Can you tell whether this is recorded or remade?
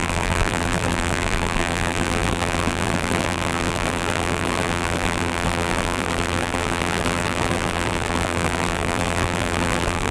remade